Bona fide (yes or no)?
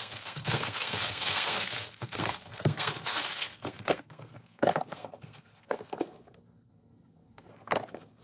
no